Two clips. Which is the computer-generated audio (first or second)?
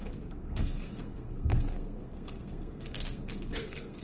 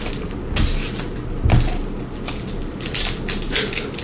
first